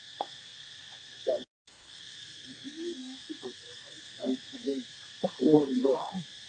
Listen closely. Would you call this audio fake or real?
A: fake